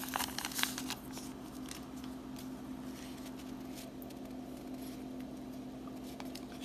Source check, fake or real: real